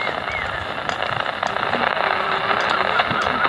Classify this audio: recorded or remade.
recorded